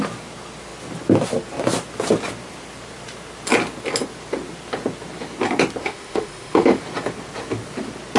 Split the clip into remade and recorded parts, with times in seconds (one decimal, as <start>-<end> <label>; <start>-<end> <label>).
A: 0.0-5.8 recorded; 5.8-6.8 remade; 6.8-8.2 recorded